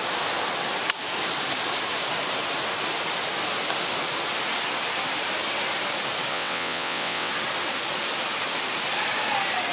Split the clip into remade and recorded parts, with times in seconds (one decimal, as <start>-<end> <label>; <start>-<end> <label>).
0.0-6.3 recorded; 6.3-7.3 remade; 7.3-9.7 recorded